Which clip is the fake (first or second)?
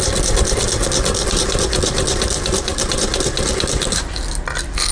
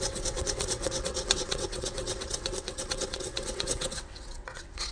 second